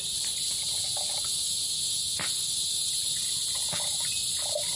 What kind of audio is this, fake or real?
real